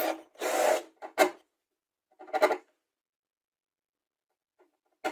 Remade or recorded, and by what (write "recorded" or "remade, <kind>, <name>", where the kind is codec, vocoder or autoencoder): recorded